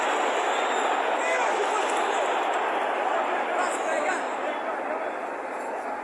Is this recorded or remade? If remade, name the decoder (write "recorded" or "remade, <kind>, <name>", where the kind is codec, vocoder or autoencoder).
recorded